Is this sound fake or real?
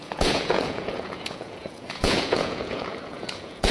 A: fake